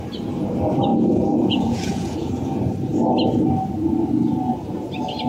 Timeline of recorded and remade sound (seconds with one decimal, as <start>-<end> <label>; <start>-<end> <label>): 0.0-0.9 recorded; 0.9-2.3 remade; 2.3-5.3 recorded